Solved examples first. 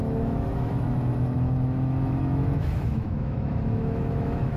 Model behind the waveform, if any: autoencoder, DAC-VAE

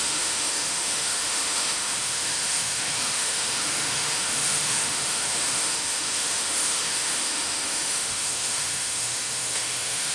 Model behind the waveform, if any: autoencoder, DAC-VAE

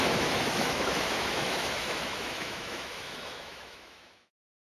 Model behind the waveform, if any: autoencoder, DAC-VAE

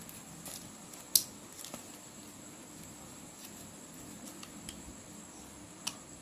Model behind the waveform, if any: none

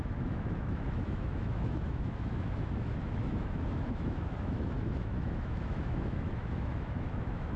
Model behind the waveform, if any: autoencoder, DAC-VAE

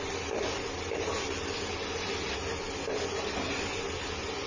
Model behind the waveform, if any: none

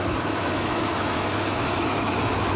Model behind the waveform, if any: autoencoder, DAC-VAE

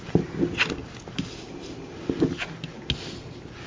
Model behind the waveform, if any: none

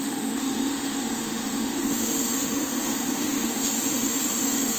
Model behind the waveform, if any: autoencoder, DAC-VAE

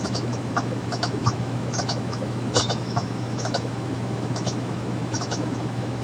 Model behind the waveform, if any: autoencoder, DAC-VAE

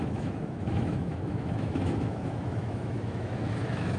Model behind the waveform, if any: autoencoder, DAC-VAE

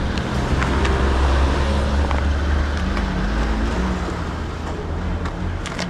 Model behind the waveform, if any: none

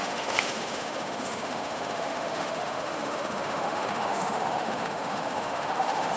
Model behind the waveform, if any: autoencoder, DAC-VAE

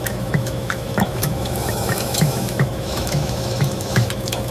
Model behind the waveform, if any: autoencoder, DAC-VAE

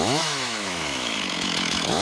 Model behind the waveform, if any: autoencoder, DAC-VAE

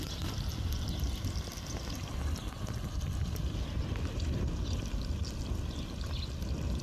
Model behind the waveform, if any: none